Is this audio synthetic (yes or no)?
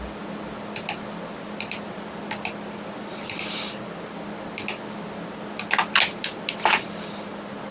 no